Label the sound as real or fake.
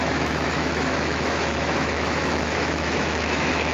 fake